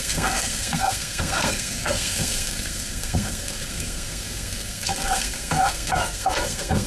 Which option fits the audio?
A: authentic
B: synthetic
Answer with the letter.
B